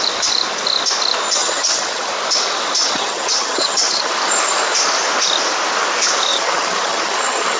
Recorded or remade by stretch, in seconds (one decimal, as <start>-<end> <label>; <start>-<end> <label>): 0.0-1.4 recorded; 1.4-2.1 remade; 2.1-2.8 recorded; 2.8-4.1 remade; 4.1-6.3 recorded; 6.3-7.6 remade